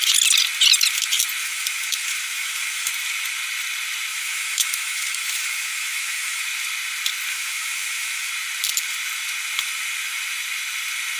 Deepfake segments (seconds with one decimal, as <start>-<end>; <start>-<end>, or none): 1.4-2.9; 4.1-6.4; 7.3-8.3